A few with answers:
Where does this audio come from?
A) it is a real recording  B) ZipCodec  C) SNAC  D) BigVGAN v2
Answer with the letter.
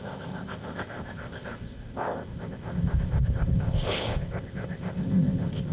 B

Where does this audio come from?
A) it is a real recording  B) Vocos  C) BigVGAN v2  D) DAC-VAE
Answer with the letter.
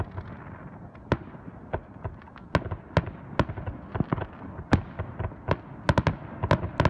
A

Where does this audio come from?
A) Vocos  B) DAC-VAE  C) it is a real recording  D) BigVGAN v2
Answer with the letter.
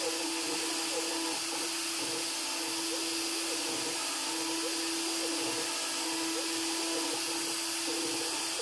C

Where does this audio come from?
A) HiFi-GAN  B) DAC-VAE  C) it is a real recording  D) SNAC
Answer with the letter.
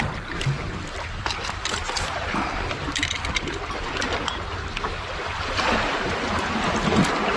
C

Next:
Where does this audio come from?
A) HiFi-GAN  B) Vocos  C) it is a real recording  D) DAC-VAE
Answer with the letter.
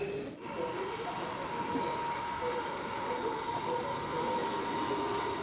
C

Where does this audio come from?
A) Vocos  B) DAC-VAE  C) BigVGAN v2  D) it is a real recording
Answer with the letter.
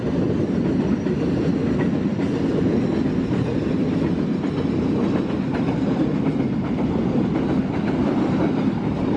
D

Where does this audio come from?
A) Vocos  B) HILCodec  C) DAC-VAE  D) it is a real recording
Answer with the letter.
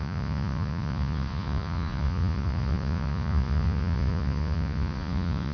A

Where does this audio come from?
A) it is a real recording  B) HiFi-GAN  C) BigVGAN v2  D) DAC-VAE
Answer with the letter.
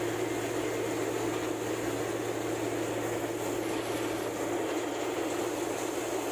A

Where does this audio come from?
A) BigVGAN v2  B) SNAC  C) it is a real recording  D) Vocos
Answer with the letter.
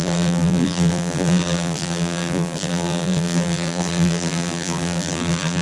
A